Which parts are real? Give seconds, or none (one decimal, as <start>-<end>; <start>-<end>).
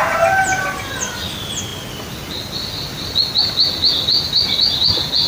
0.0-5.3